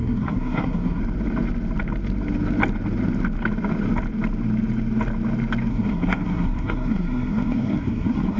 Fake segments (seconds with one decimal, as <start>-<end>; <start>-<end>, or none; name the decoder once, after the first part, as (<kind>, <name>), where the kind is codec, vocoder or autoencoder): 0.0-1.0 (codec, SNAC); 5.7-8.4